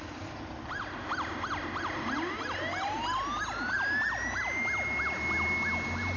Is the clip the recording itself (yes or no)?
yes